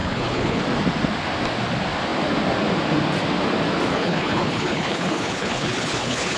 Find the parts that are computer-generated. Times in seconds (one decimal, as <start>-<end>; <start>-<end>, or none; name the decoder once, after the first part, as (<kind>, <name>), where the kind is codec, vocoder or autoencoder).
0.0-0.6 (codec, HILCodec); 3.9-6.4